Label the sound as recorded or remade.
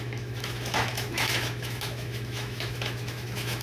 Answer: remade